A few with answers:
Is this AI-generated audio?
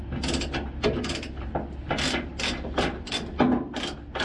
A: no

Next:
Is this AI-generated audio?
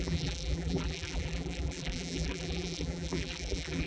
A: yes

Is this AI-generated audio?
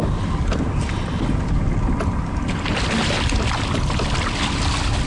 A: no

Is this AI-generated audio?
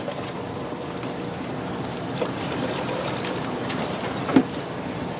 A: yes